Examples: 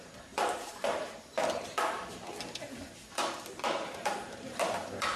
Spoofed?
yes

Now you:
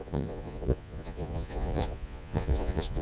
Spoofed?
yes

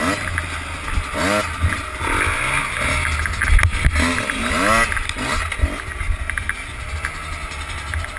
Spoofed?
no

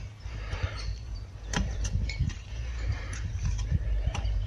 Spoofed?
yes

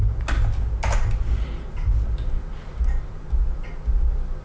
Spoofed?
no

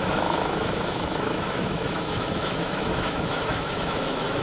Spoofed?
yes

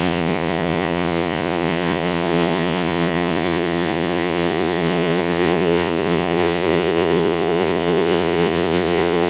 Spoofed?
yes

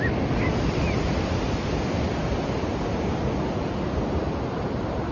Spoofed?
no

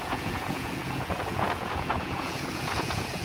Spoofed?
yes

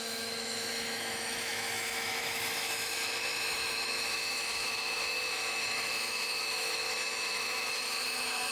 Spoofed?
yes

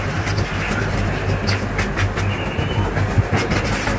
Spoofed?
no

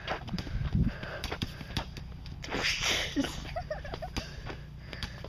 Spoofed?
no